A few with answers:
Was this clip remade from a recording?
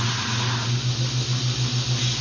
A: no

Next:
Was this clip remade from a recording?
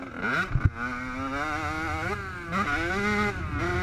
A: no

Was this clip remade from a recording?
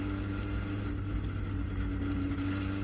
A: no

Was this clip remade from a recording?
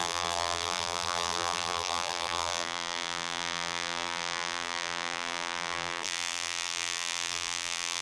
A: yes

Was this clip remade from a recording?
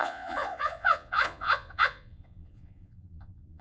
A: yes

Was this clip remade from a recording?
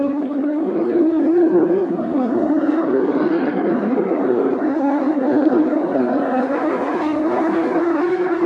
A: yes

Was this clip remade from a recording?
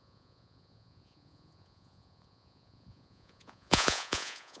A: yes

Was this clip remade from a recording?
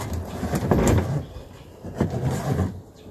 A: no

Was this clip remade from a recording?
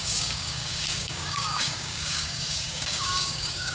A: yes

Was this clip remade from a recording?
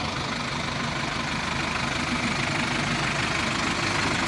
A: no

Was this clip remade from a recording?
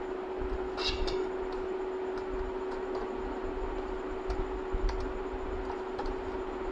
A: no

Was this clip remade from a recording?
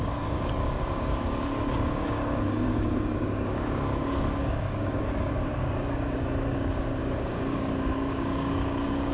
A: yes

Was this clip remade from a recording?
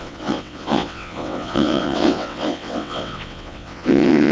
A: yes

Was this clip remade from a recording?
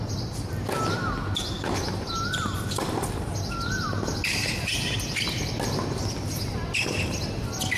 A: no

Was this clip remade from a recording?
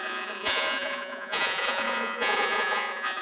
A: yes